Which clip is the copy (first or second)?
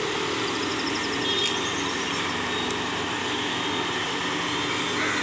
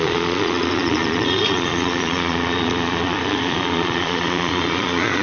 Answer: second